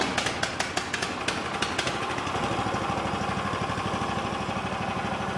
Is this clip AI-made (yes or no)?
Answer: no